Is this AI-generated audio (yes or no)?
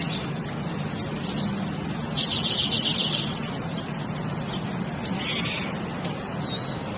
no